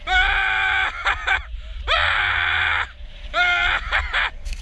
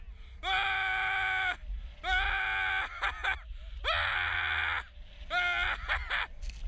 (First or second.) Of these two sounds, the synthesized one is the first